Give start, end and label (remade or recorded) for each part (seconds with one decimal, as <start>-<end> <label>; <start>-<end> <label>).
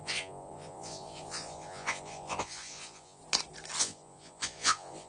0.0-3.2 remade; 3.2-3.8 recorded; 3.8-5.1 remade